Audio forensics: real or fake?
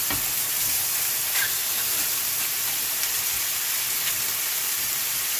fake